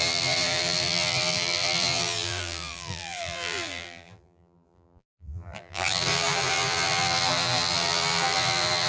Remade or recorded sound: remade